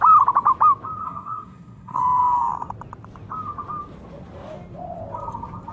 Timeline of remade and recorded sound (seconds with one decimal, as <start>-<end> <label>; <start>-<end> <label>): 0.0-1.0 recorded; 1.0-2.0 remade; 2.0-5.7 recorded